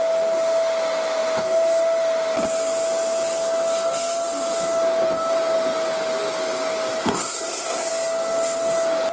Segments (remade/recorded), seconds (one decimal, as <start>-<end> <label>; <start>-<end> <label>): 0.0-7.0 recorded; 7.0-7.9 remade; 7.9-9.1 recorded